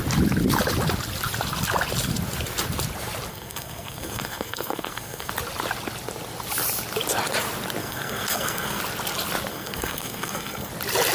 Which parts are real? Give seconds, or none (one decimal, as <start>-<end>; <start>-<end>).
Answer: 0.0-3.3; 5.3-7.8; 8.8-9.5; 10.7-11.1